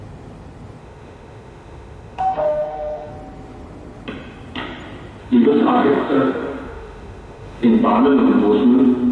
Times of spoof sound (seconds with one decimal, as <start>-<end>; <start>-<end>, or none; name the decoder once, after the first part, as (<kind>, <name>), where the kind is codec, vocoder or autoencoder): 0.8-3.1 (autoencoder, DAC-VAE); 5.2-7.7